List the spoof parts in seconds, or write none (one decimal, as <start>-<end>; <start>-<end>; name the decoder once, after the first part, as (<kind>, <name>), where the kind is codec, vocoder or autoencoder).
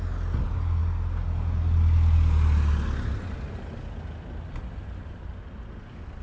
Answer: none